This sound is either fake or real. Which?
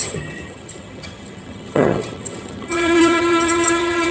fake